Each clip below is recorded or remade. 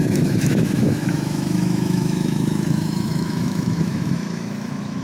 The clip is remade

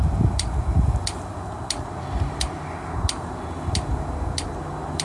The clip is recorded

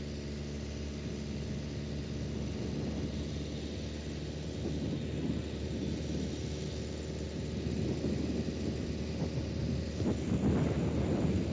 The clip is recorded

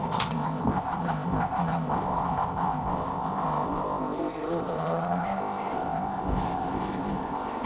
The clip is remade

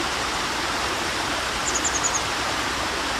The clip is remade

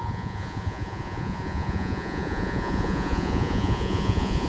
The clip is remade